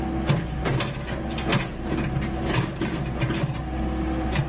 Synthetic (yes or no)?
no